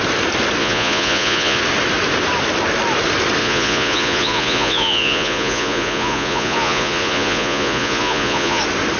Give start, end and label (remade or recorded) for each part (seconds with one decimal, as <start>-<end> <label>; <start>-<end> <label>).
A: 0.0-0.6 recorded; 0.6-1.6 remade; 1.6-3.4 recorded; 3.4-8.6 remade; 8.6-9.0 recorded